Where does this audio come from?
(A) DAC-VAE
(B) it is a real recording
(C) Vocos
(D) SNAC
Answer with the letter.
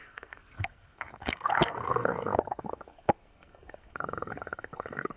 D